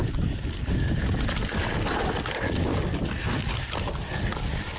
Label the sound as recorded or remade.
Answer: recorded